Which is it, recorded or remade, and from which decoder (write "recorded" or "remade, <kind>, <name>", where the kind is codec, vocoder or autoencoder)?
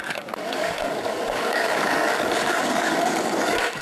remade, codec, DAC